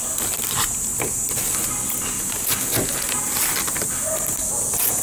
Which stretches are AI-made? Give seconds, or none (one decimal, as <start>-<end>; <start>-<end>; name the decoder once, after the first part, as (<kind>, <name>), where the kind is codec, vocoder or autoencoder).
none